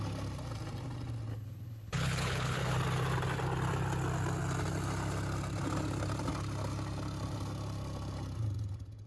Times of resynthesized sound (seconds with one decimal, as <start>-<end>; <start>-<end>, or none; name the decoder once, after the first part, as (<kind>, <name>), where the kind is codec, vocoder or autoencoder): 1.3-2.6 (codec, HILCodec)